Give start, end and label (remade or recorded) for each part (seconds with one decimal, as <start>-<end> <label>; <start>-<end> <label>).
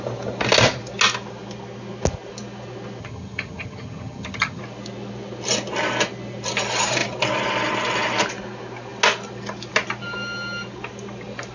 0.0-3.0 recorded; 3.0-4.6 remade; 4.6-11.5 recorded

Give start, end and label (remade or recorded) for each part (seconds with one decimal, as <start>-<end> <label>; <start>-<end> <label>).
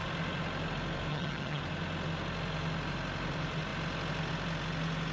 0.0-1.1 recorded; 1.1-1.6 remade; 1.6-5.1 recorded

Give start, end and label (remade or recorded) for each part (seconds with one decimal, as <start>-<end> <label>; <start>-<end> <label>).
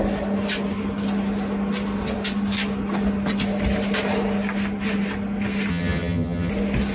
0.0-5.7 recorded; 5.7-6.5 remade; 6.5-6.9 recorded